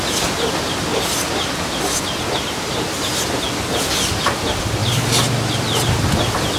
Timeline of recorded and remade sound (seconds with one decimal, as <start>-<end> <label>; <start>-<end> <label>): 0.0-0.9 recorded; 0.9-1.8 remade; 1.8-4.8 recorded; 4.8-6.1 remade; 6.1-6.6 recorded